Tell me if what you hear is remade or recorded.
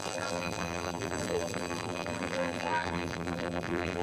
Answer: remade